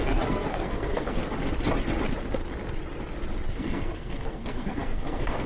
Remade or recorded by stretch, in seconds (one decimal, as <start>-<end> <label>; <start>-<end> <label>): 0.0-1.2 remade; 1.2-3.5 recorded; 3.5-5.5 remade